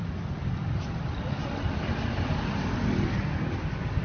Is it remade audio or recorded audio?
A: recorded